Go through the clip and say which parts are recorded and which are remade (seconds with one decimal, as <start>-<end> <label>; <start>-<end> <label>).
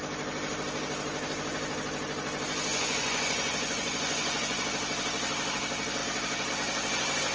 0.0-2.7 recorded; 2.7-4.6 remade; 4.6-7.3 recorded